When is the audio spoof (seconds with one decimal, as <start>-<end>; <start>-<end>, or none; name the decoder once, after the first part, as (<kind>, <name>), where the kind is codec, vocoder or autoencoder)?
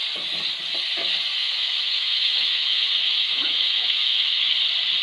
1.4-4.4 (autoencoder, DAC-VAE)